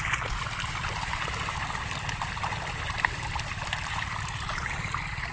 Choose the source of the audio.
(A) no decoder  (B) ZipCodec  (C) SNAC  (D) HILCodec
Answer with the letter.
A